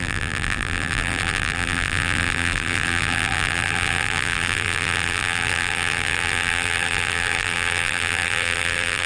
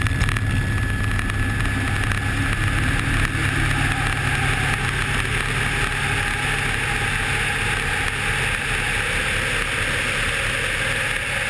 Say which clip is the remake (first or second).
first